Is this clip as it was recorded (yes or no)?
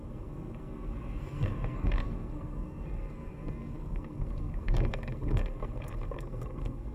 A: no